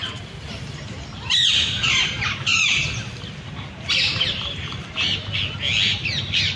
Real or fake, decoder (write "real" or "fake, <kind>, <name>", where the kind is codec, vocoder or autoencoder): real